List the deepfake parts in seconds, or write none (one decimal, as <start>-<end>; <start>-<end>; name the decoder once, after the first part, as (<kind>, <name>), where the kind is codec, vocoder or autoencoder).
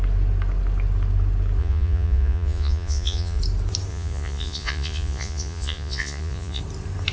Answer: 1.6-3.4 (vocoder, Vocos); 3.9-6.6